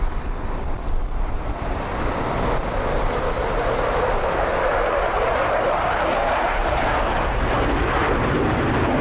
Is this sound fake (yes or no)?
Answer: no